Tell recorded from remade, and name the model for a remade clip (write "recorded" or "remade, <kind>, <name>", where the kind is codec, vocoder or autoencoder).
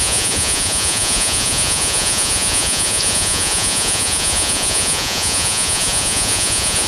remade, vocoder, Vocos